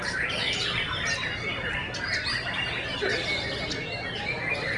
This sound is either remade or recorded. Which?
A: remade